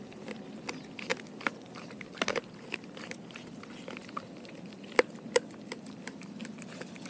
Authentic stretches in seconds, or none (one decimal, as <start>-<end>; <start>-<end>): 0.0-4.0; 6.4-7.1